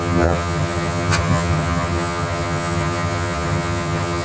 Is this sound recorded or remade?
remade